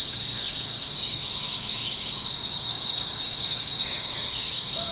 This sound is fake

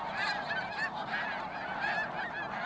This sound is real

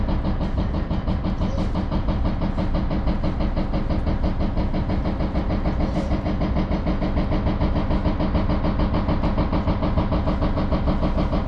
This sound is real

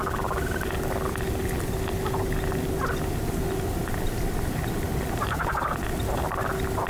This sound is real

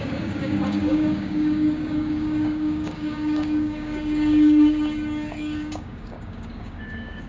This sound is fake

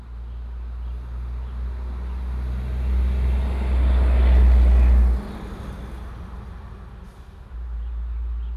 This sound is real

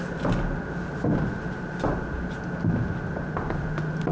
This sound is real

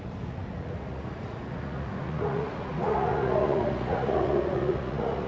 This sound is fake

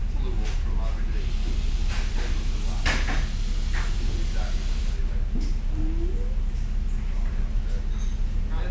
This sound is real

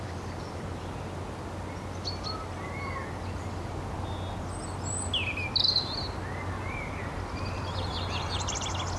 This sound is real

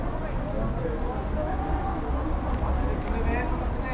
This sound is real